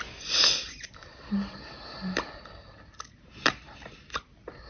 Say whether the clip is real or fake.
real